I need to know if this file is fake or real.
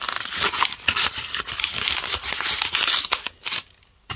real